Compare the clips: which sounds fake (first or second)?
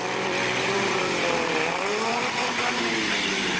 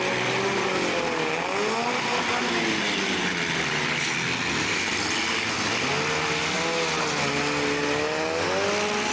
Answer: first